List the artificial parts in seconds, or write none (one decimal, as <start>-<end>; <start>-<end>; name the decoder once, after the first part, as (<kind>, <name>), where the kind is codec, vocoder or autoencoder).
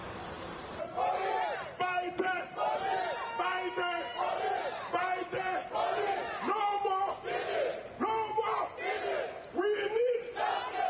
0.0-3.4 (vocoder, BigVGAN v2); 4.1-4.6